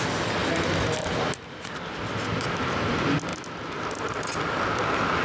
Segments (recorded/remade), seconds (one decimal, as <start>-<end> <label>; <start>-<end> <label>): 0.0-5.2 recorded